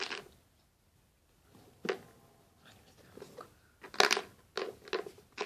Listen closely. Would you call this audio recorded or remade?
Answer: recorded